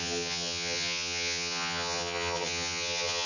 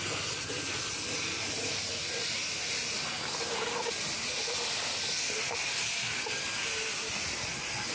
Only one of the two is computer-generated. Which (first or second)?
first